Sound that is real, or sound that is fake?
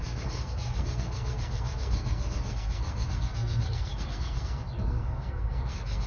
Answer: fake